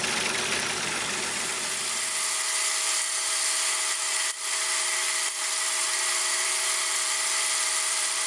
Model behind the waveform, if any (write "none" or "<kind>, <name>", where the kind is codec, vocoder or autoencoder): vocoder, BigVGAN v2